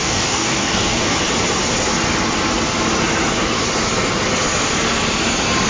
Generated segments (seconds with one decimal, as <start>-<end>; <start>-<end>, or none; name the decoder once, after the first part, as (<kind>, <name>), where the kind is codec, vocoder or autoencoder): 0.0-1.2 (codec, DAC)